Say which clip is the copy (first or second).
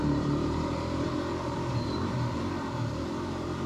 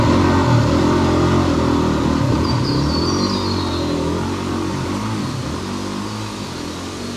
first